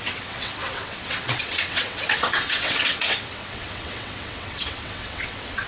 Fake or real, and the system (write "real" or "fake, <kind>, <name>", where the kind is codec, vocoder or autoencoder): fake, vocoder, WaveNeXt